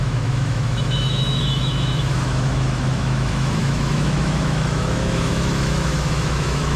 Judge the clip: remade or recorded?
remade